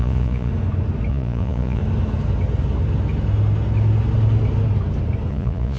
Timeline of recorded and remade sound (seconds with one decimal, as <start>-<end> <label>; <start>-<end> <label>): 0.0-0.5 remade; 0.5-1.1 recorded; 1.1-1.8 remade; 1.8-5.3 recorded; 5.3-5.8 remade